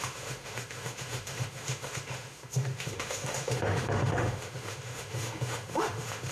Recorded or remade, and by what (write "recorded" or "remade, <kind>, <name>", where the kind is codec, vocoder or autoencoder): remade, autoencoder, DAC-VAE